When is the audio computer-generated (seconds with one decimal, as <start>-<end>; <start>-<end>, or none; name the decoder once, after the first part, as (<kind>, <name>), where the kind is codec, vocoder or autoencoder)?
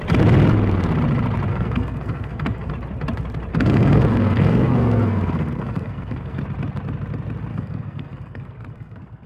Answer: 1.5-2.7 (codec, SNAC); 3.5-6.4; 7.5-9.3